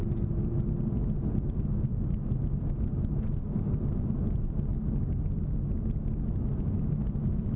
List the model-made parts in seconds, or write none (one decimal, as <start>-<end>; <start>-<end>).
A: none